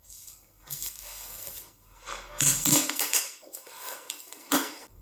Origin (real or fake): fake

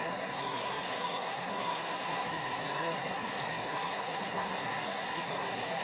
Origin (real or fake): fake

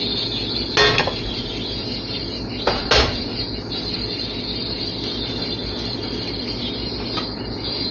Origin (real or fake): real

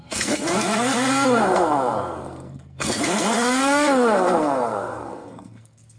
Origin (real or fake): fake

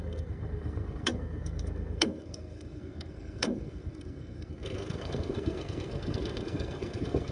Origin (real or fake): fake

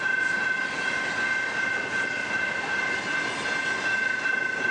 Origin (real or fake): real